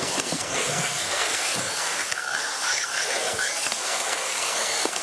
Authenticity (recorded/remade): remade